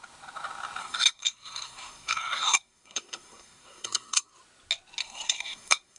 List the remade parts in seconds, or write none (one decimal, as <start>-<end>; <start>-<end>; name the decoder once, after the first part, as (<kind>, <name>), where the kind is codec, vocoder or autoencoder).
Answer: 0.8-4.3 (codec, SNAC); 5.0-6.0